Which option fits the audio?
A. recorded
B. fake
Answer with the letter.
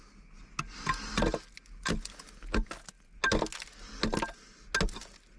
A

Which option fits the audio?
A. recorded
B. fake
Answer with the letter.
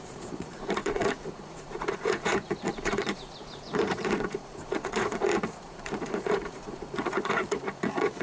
B